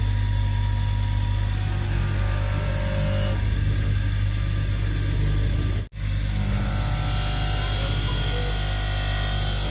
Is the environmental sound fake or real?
real